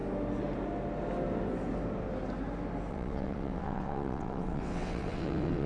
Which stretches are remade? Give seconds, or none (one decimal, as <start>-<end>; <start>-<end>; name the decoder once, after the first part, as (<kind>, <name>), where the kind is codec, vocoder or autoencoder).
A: 2.9-5.7 (vocoder, WaveNeXt)